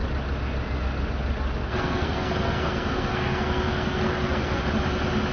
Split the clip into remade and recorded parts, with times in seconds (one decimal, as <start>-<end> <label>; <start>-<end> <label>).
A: 0.0-1.6 recorded; 1.6-4.6 remade; 4.6-5.3 recorded